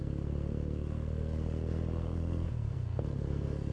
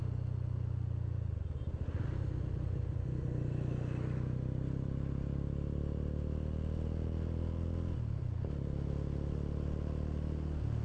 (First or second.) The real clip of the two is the second